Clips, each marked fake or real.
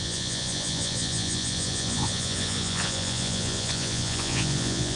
fake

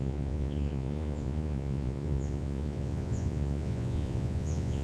fake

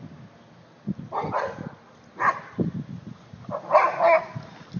real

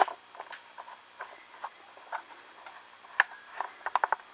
real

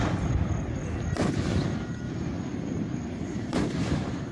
real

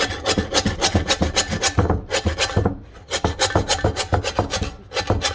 real